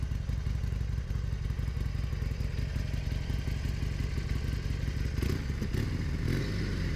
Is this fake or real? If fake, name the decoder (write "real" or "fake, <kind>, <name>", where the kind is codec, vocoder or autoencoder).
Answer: real